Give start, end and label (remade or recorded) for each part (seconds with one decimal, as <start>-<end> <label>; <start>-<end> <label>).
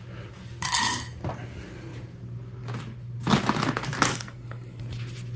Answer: 0.0-4.1 recorded; 4.1-4.8 remade; 4.8-5.4 recorded